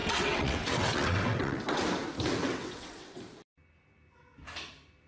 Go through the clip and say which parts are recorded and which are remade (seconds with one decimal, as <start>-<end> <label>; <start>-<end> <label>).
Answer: 0.0-1.8 remade; 1.8-2.4 recorded; 2.4-3.2 remade; 3.2-5.1 recorded